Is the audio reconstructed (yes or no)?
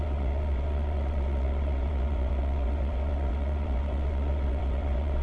yes